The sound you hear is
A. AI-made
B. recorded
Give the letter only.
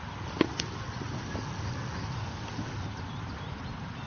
B